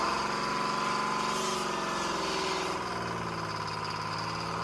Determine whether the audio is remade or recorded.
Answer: recorded